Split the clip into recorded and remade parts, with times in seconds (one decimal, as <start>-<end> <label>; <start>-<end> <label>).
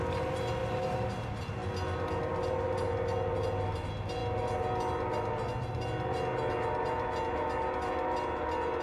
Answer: 0.0-0.6 recorded; 0.6-1.1 remade; 1.1-8.8 recorded